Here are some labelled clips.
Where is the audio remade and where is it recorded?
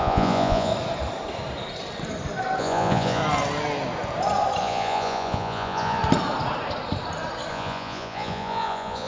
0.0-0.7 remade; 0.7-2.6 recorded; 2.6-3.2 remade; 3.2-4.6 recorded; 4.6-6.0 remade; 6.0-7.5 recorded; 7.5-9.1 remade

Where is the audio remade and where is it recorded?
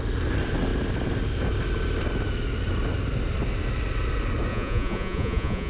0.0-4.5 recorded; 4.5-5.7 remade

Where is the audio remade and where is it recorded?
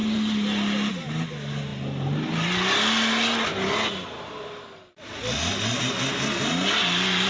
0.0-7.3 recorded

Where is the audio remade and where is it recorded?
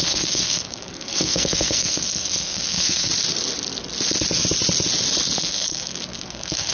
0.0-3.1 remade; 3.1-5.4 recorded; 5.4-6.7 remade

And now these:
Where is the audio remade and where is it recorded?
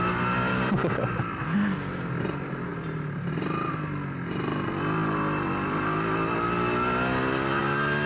0.0-0.5 recorded; 0.5-1.2 remade; 1.2-8.1 recorded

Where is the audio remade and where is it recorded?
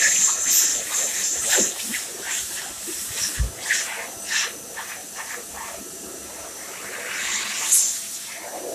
0.0-0.7 recorded; 0.7-3.3 remade; 3.3-5.0 recorded; 5.0-7.4 remade; 7.4-8.7 recorded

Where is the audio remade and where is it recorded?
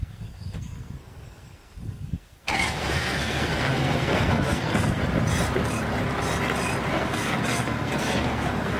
0.0-5.0 remade; 5.0-6.9 recorded; 6.9-8.8 remade